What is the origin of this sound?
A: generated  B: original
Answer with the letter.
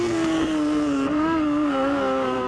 A